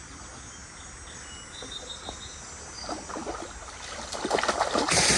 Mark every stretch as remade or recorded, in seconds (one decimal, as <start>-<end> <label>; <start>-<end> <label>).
0.0-5.2 recorded